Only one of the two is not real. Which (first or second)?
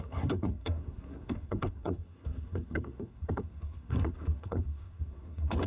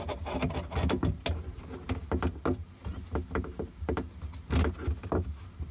first